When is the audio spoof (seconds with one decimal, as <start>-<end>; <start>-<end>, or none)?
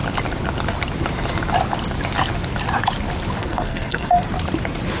3.4-4.3